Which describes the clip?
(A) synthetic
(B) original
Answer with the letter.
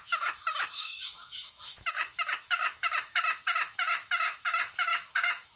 A